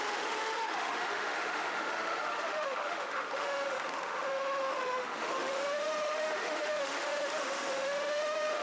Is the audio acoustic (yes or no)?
no